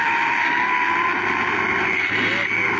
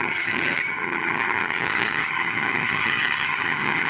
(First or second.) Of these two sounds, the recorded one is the first